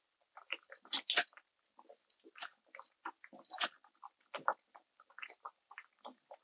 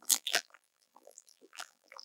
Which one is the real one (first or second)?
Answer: first